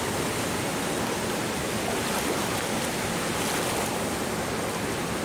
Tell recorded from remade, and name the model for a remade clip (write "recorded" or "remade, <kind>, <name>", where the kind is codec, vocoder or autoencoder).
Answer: recorded